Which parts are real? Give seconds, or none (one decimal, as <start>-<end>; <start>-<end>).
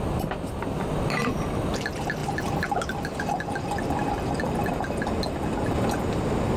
0.0-2.2; 3.2-6.6